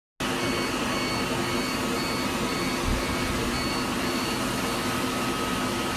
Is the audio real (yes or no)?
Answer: yes